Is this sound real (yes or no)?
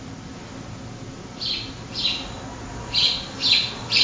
yes